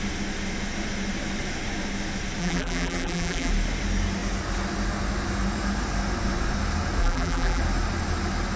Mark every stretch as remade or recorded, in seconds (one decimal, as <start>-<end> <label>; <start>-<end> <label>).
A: 0.0-2.4 recorded; 2.4-3.5 remade; 3.5-7.0 recorded; 7.0-7.6 remade; 7.6-8.6 recorded